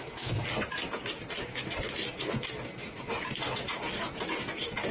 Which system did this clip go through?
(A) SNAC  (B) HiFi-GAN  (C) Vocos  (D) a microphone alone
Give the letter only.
D